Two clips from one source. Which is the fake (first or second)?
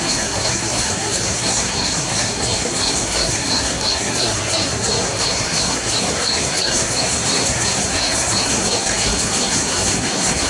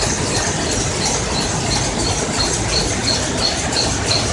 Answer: first